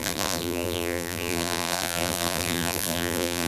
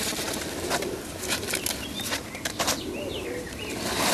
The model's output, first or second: first